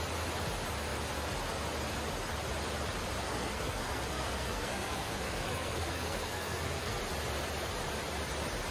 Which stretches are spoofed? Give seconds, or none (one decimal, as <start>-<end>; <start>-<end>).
3.2-7.0